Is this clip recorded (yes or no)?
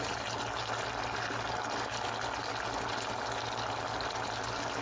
yes